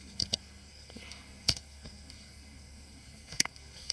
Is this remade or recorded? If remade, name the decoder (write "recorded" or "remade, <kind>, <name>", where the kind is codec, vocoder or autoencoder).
remade, codec, SNAC